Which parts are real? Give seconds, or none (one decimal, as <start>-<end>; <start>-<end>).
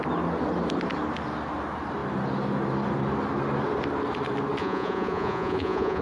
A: 0.0-4.6